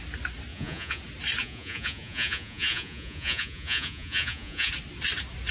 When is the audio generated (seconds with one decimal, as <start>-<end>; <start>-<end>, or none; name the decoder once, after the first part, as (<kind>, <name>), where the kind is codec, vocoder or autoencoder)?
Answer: 0.5-1.0 (vocoder, Vocos); 1.4-4.7